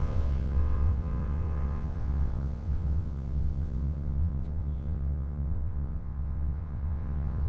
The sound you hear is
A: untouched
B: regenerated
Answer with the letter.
B